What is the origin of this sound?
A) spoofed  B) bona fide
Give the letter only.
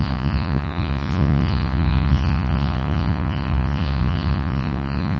A